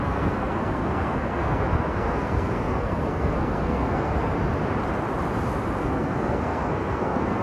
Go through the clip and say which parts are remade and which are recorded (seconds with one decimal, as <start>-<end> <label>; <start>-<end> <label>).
0.0-4.3 remade; 4.3-5.8 recorded; 5.8-7.4 remade